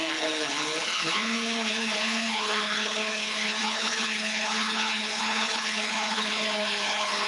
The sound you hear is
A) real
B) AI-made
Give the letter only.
B